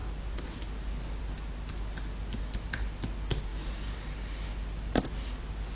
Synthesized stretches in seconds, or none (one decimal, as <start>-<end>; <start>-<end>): none